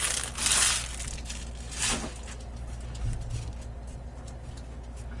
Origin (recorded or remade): recorded